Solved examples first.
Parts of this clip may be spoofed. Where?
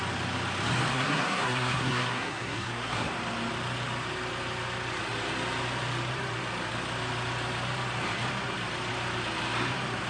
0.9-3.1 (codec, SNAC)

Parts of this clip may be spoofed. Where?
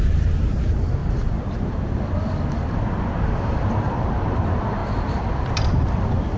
none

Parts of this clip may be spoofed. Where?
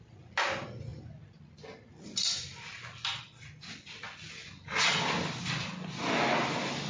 none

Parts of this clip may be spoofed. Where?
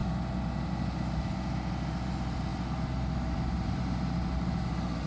none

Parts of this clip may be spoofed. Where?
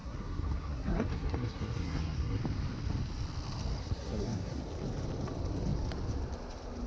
0.0-2.4 (codec, SNAC); 3.8-4.6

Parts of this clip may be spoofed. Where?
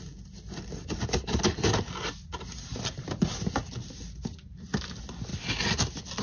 none